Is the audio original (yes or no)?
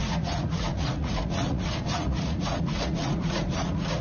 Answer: no